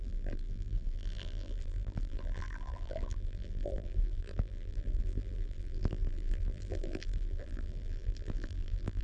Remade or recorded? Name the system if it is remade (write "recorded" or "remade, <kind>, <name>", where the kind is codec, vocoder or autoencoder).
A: remade, vocoder, BigVGAN v2